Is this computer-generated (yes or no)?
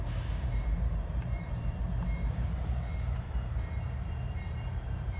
yes